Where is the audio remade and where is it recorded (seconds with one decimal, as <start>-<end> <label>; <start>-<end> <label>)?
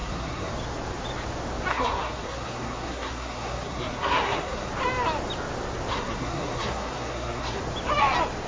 0.0-0.5 remade; 0.5-1.7 recorded; 1.7-4.7 remade; 4.7-5.9 recorded; 5.9-7.6 remade; 7.6-8.5 recorded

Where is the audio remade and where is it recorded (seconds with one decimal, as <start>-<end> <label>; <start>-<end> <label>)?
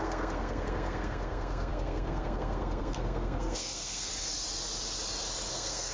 0.0-4.1 remade; 4.1-5.5 recorded; 5.5-5.9 remade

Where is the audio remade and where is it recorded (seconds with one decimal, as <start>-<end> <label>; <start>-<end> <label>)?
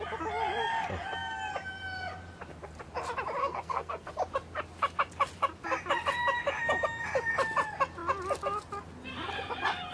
0.0-3.4 recorded; 3.4-4.1 remade; 4.1-9.9 recorded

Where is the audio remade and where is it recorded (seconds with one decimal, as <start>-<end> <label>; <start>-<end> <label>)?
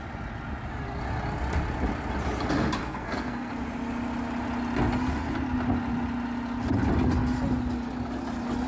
0.0-2.8 recorded; 2.8-3.5 remade; 3.5-8.7 recorded